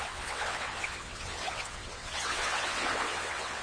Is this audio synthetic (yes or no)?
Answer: yes